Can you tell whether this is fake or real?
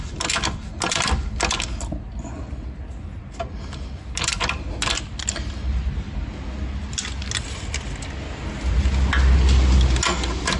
real